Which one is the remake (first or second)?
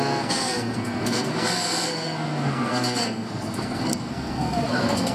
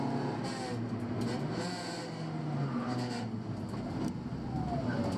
first